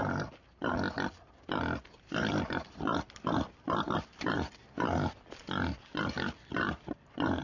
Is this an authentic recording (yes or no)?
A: yes